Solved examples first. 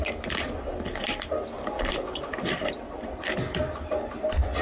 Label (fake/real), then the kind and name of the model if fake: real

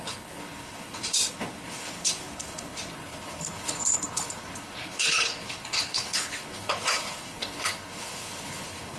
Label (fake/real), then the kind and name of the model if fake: fake, codec, HILCodec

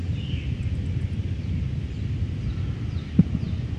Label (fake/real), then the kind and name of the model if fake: real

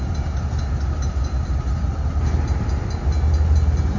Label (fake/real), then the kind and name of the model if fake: real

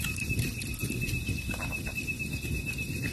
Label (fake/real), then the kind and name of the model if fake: real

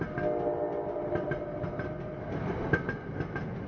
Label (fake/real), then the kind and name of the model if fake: real